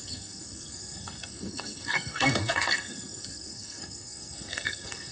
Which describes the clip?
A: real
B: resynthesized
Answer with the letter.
B